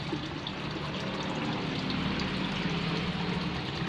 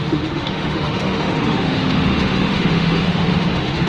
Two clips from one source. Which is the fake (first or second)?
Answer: second